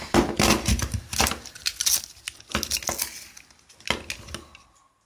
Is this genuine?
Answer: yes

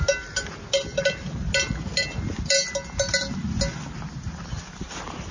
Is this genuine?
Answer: yes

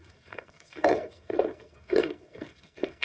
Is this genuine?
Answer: no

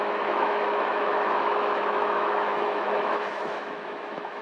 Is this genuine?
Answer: no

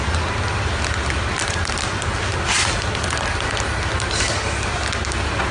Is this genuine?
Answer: yes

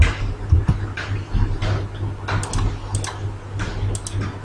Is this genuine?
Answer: yes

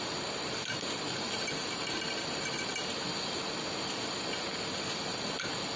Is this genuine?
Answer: yes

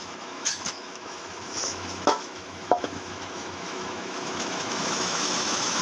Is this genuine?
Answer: no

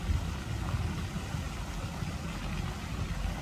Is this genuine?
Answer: yes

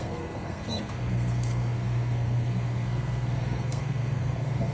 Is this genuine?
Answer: no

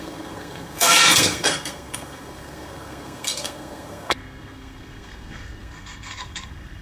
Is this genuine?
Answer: no